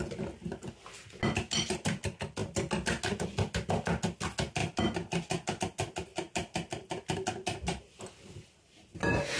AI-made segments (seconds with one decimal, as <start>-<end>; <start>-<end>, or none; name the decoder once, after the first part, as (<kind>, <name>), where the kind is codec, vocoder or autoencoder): none